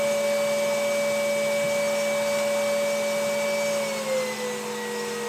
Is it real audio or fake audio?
real